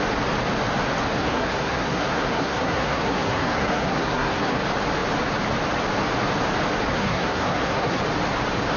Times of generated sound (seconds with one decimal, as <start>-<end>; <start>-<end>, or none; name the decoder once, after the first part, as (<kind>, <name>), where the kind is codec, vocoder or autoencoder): 1.2-4.6 (codec, SNAC); 6.9-8.0